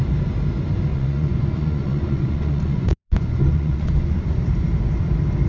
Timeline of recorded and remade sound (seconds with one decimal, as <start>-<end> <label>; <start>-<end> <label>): 0.0-0.9 recorded; 0.9-4.2 remade; 4.2-5.5 recorded